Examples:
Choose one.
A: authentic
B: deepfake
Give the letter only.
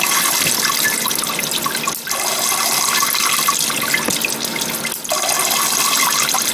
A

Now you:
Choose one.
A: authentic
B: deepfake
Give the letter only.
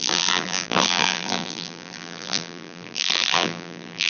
B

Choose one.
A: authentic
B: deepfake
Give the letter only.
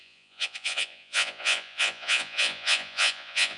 B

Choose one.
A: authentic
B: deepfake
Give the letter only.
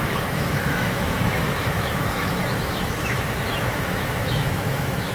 B